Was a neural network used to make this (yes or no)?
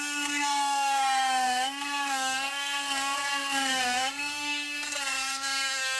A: yes